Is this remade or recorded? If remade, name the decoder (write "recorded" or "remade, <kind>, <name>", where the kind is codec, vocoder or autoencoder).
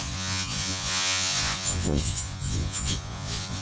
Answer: remade, vocoder, Vocos